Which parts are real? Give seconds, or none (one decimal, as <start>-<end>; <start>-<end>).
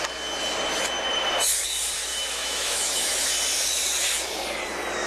0.0-2.1; 3.3-5.1